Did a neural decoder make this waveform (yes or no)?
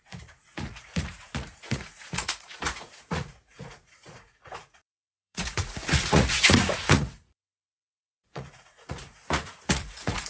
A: yes